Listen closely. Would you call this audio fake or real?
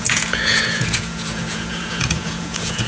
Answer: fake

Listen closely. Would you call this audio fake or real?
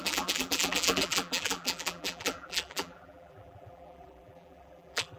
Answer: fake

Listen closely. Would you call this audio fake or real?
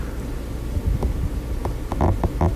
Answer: real